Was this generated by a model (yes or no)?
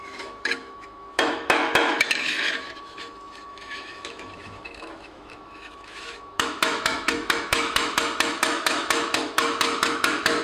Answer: yes